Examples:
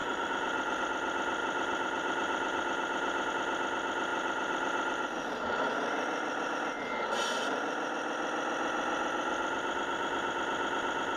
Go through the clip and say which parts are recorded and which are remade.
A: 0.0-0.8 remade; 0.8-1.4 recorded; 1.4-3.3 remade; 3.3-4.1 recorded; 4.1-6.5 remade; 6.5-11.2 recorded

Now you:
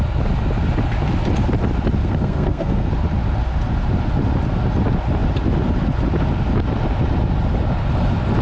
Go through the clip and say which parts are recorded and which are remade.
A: 0.0-2.0 recorded; 2.0-2.9 remade; 2.9-8.4 recorded

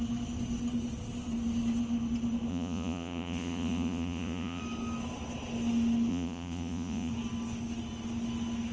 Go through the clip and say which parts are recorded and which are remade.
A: 0.0-2.5 recorded; 2.5-4.6 remade; 4.6-6.1 recorded; 6.1-7.1 remade; 7.1-8.7 recorded

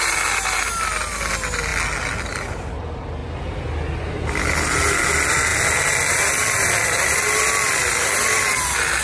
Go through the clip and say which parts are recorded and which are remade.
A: 0.0-9.0 recorded